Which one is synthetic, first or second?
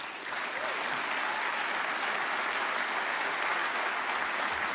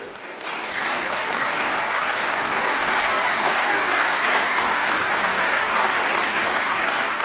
second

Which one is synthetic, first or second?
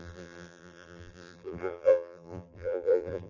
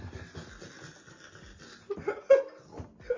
first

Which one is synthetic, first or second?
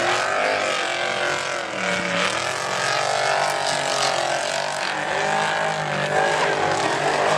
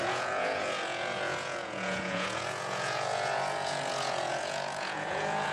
second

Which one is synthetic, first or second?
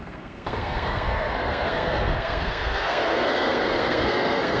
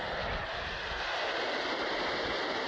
first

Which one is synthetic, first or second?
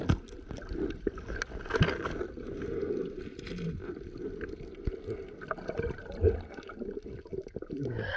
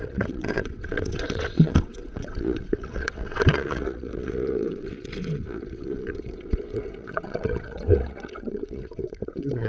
second